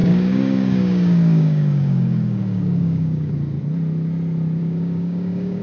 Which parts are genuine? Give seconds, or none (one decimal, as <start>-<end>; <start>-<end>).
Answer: 3.3-4.6